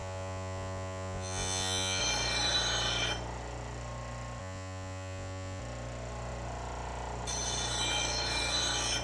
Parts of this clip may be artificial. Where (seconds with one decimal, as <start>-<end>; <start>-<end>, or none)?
0.0-2.0; 4.4-5.6